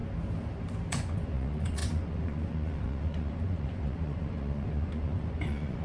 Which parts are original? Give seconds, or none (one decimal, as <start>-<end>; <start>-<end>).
0.0-0.9